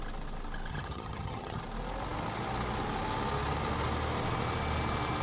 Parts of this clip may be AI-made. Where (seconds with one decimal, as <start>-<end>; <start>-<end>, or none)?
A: 0.7-1.6